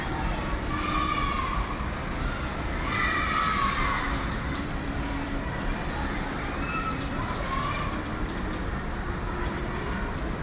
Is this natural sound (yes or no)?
no